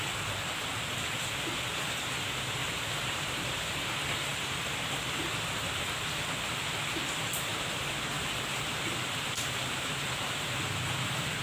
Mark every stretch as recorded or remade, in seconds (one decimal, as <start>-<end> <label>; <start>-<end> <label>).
0.0-2.6 recorded; 2.6-3.6 remade; 3.6-7.5 recorded; 7.5-10.6 remade; 10.6-11.4 recorded